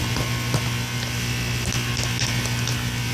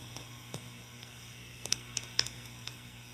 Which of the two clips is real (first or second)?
first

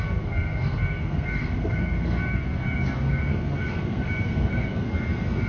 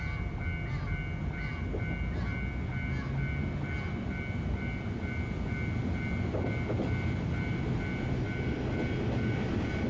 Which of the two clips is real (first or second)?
second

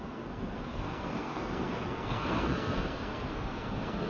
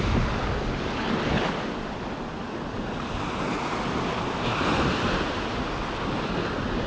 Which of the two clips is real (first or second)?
second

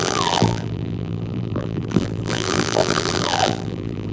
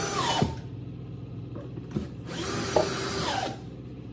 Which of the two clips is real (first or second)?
second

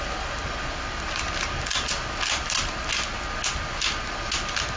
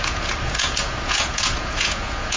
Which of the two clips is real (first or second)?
first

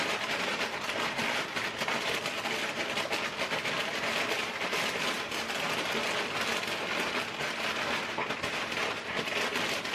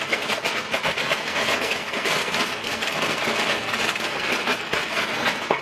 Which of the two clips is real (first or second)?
first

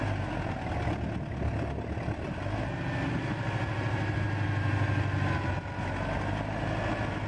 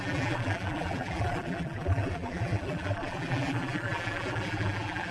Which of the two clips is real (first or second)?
first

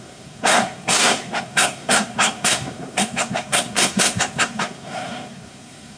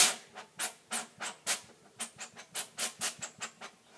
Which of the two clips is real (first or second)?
second